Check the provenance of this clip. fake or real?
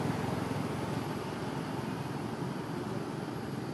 real